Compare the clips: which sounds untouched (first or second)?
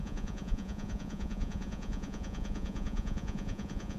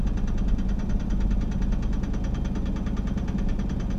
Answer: second